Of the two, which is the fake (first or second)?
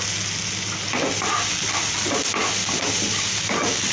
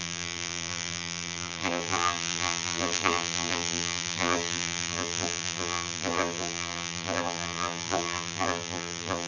second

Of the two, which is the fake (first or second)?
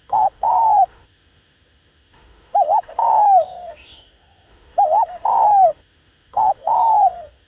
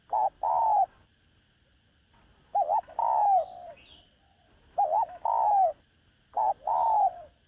first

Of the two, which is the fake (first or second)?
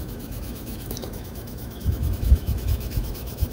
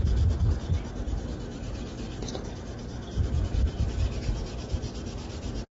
first